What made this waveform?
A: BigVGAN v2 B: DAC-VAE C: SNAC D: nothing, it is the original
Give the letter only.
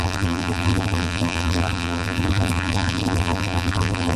A